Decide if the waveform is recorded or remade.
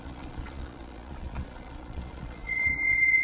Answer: remade